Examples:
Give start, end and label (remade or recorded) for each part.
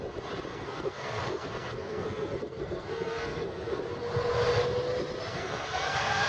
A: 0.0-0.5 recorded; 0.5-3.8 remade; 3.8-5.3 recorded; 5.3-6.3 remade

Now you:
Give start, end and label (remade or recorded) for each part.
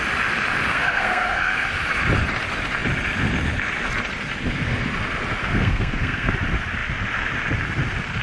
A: 0.0-0.7 recorded; 0.7-1.7 remade; 1.7-5.4 recorded; 5.4-6.3 remade; 6.3-8.2 recorded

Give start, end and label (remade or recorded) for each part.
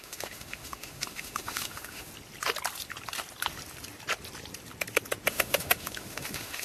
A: 0.0-2.1 remade; 2.1-5.3 recorded; 5.3-6.6 remade